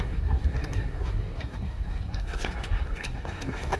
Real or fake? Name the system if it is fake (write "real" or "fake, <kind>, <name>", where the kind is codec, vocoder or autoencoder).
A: fake, codec, SNAC